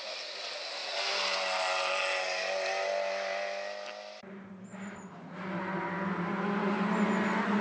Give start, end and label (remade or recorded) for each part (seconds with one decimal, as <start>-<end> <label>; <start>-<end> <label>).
0.0-7.6 recorded

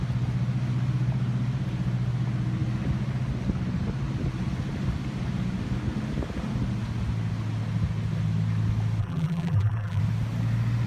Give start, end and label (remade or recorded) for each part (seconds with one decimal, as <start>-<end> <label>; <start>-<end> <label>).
0.0-9.0 recorded; 9.0-10.0 remade; 10.0-10.9 recorded

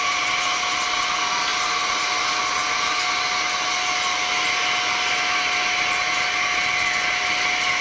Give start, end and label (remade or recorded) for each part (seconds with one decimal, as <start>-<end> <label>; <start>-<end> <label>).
0.0-7.8 recorded

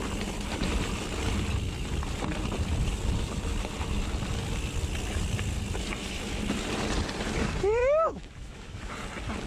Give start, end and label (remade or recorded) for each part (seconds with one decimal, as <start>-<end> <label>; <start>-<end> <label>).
0.0-7.8 recorded; 7.8-8.9 remade; 8.9-9.5 recorded

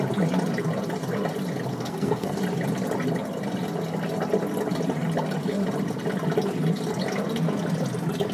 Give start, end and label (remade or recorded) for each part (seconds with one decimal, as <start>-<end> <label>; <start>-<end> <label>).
0.0-1.7 recorded; 1.7-2.4 remade; 2.4-8.3 recorded

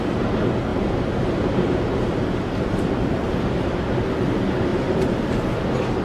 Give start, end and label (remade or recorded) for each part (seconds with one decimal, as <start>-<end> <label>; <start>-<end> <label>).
0.0-0.7 recorded; 0.7-2.9 remade; 2.9-4.7 recorded; 4.7-5.5 remade; 5.5-6.0 recorded